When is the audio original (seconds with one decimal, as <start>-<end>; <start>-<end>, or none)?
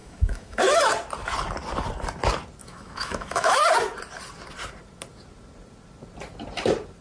0.6-2.6; 3.6-7.0